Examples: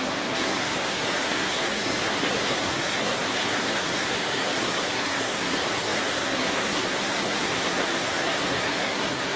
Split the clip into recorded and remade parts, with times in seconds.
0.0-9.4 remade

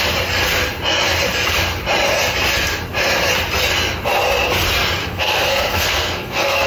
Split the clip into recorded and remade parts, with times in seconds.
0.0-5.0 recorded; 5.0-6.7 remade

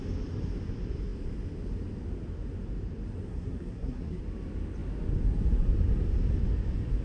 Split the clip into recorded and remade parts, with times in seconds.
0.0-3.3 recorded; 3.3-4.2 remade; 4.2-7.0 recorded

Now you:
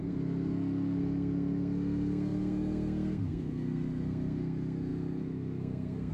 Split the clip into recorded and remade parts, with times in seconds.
0.0-6.1 remade

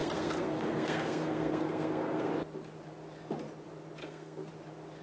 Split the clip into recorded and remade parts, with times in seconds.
0.0-2.3 remade; 2.3-4.0 recorded; 4.0-4.5 remade; 4.5-5.0 recorded

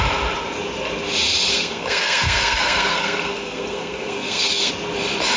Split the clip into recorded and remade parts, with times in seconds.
0.0-1.5 recorded; 1.5-4.7 remade; 4.7-5.4 recorded

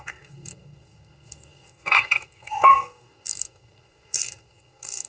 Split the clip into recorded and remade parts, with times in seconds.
0.0-5.1 remade